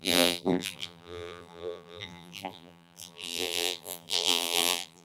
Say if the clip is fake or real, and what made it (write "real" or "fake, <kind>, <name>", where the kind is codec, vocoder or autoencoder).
fake, vocoder, BigVGAN v2